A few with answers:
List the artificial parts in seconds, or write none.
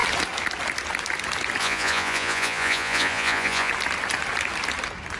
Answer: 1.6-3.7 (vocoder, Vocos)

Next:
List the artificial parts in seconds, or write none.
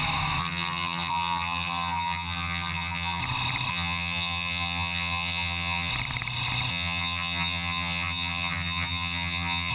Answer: 0.4-3.2 (vocoder, HiFi-GAN); 3.7-5.9; 6.7-9.7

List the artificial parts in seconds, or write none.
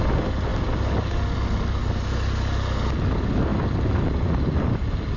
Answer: none